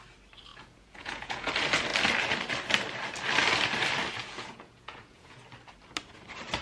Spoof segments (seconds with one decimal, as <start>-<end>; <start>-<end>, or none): 0.5-1.5; 4.2-5.4